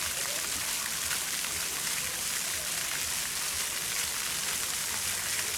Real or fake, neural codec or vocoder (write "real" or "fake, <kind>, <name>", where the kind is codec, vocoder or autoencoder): real